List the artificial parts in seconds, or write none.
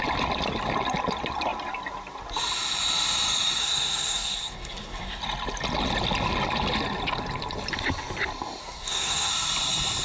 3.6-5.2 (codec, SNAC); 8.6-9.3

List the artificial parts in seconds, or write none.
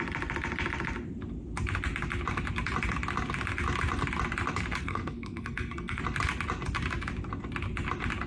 4.8-6.0 (codec, SNAC)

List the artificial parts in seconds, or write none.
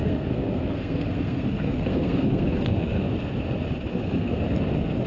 0.0-3.1 (codec, SNAC); 3.9-4.4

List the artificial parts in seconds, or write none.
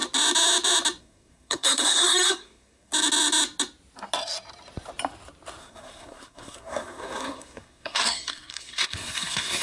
1.0-2.9 (codec, SNAC); 5.6-9.6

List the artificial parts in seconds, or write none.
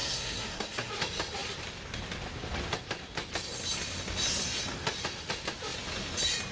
0.0-0.9 (codec, SNAC)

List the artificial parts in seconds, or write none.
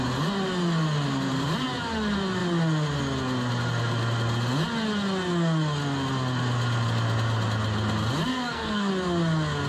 8.3-8.9 (codec, SNAC)